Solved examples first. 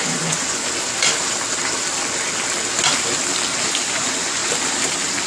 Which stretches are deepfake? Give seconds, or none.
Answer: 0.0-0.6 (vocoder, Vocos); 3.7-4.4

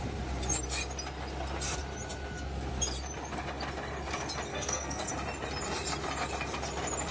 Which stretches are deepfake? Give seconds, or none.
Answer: 4.5-5.1 (codec, SNAC)

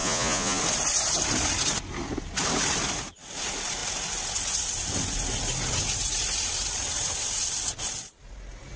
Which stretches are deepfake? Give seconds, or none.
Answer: 0.0-0.6 (vocoder, Vocos)